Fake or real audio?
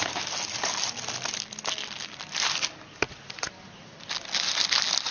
real